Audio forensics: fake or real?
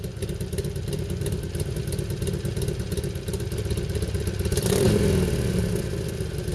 real